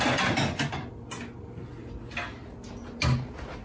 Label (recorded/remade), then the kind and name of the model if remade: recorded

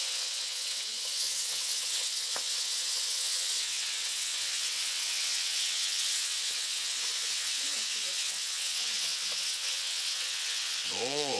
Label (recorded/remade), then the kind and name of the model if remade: remade, vocoder, WaveNeXt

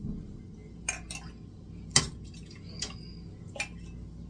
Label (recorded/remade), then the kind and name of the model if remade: recorded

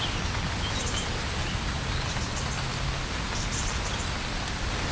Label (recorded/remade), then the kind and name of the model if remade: recorded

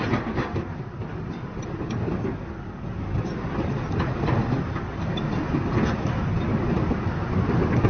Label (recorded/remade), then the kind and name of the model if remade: recorded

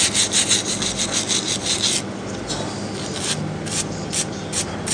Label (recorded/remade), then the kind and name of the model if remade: recorded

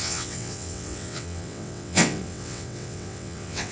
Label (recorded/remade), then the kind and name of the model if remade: remade, vocoder, WaveNeXt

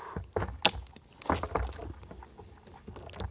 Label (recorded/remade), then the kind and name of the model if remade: recorded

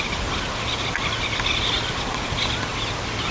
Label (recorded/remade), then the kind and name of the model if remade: recorded